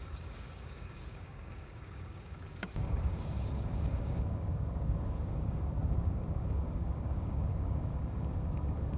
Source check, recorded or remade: remade